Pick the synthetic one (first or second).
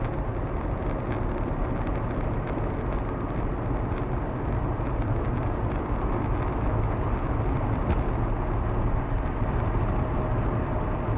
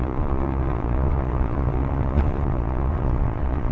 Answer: second